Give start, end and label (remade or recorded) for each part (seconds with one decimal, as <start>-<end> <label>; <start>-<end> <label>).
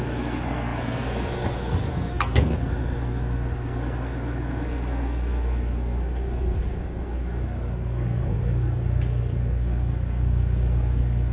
0.0-11.3 remade